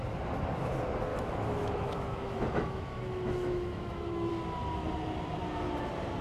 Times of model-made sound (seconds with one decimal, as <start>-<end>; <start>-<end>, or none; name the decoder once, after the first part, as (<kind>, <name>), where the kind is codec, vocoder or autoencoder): 1.1-4.3 (autoencoder, DAC-VAE)